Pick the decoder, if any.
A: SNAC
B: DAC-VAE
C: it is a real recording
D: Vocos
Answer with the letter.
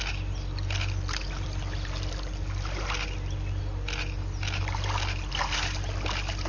C